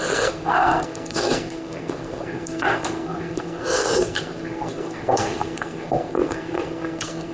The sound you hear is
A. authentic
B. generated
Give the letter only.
B